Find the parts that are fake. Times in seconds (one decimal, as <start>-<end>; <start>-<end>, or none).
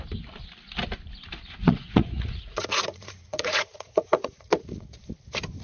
1.6-5.0